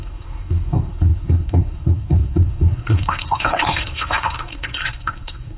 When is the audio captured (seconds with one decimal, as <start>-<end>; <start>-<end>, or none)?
none